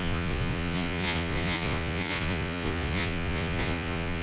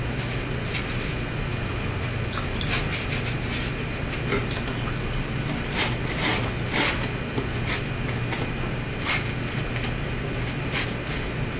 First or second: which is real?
second